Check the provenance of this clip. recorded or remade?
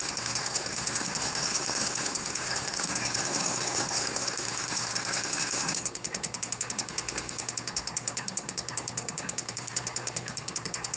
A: remade